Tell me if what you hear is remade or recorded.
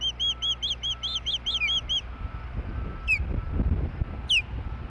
recorded